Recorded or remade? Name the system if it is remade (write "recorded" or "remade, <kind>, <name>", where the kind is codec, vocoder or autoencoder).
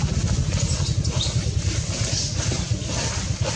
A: recorded